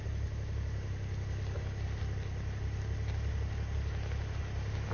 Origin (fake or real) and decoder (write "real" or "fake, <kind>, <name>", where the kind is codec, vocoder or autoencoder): real